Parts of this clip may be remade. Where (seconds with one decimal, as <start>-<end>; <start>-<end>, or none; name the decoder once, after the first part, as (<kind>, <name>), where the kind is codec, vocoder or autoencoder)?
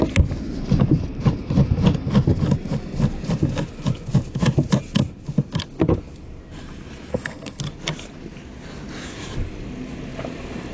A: 7.1-7.6 (codec, SNAC)